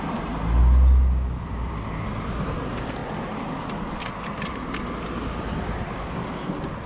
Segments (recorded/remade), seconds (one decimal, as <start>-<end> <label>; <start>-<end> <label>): 0.0-6.9 recorded